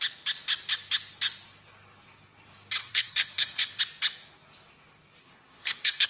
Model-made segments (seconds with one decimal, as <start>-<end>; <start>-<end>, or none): 2.8-3.8; 5.2-6.1